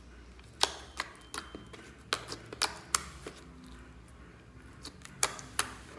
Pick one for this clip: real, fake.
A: real